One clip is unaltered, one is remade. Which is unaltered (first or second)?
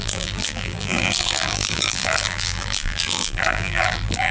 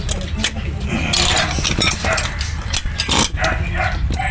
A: second